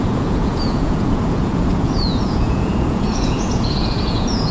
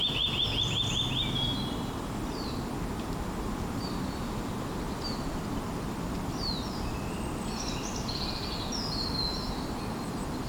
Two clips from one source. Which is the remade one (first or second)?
first